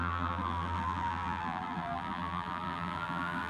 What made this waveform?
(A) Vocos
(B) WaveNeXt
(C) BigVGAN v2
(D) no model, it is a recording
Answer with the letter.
C